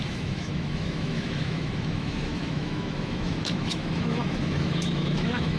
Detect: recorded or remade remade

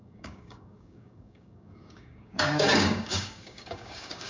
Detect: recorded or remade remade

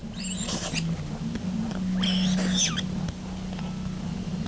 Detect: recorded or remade recorded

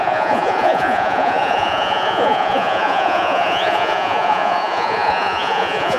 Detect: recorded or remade remade